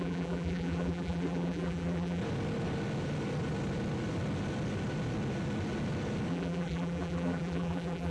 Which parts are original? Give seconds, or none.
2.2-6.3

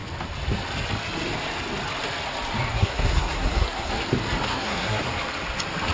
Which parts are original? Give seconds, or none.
0.0-2.7; 3.9-4.5; 5.0-5.9